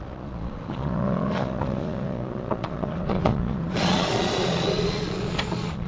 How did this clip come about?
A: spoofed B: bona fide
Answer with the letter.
A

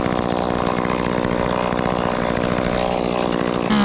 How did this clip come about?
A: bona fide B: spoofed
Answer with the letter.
A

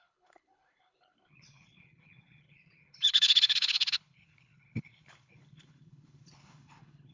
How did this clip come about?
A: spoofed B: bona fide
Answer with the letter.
A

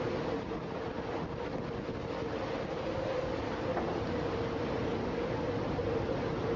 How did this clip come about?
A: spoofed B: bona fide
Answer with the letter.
B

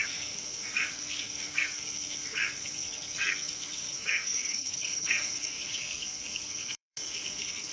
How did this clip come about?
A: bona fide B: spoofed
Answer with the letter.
B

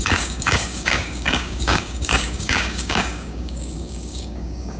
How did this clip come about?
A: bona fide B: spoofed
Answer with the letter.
B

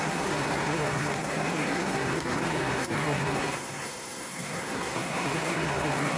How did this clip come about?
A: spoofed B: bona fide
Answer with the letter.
A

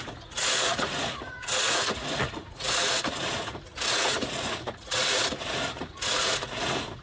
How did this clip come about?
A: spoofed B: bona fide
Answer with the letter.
A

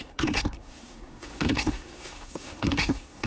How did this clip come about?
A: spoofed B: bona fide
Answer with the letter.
A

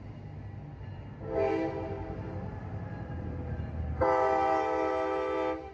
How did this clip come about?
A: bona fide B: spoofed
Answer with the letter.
A